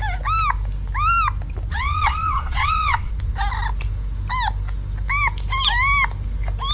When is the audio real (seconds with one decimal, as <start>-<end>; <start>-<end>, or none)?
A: 0.0-1.7; 3.1-6.7